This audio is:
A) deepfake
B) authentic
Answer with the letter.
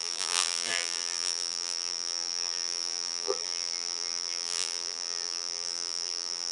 A